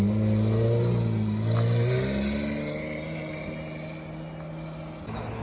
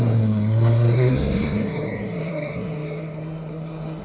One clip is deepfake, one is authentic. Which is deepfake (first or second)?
second